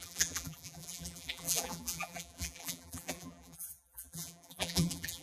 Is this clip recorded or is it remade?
remade